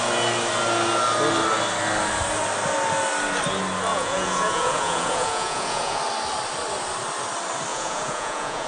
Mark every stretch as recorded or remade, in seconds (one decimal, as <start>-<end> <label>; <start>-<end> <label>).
0.0-3.9 recorded; 3.9-6.0 remade; 6.0-7.7 recorded; 7.7-8.7 remade